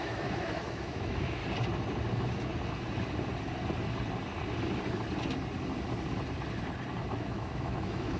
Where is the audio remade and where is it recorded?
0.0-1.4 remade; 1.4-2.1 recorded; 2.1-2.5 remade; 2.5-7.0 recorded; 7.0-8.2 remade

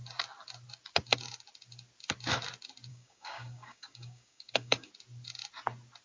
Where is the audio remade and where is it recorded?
0.0-2.9 recorded; 2.9-4.9 remade; 4.9-6.0 recorded

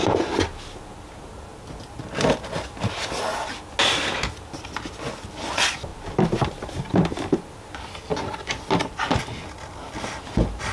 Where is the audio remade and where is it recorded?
0.0-5.9 recorded; 5.9-7.3 remade; 7.3-10.7 recorded